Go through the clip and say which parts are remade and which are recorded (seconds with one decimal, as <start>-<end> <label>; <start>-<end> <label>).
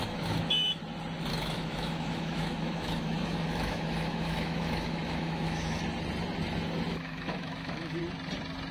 0.0-0.8 remade; 0.8-1.3 recorded; 1.3-5.8 remade; 5.8-6.9 recorded; 6.9-8.0 remade; 8.0-8.7 recorded